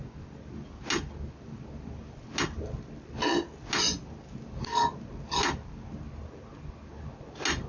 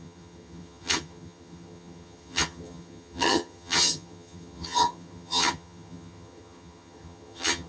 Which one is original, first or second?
first